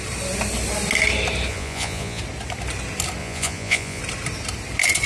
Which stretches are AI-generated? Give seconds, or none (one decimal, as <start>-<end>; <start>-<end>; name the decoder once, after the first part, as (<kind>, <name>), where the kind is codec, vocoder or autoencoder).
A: 1.5-2.2 (vocoder, Vocos); 3.2-4.0